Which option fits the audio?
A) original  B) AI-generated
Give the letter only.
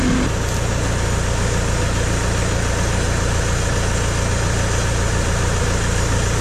A